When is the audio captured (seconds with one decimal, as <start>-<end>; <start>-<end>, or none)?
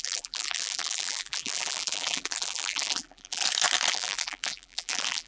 3.4-3.9